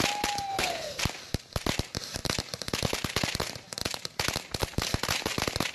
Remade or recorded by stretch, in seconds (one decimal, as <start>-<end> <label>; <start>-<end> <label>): 0.0-0.5 recorded; 0.5-1.0 remade; 1.0-5.7 recorded